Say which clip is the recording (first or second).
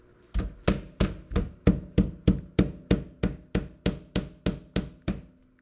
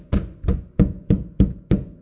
first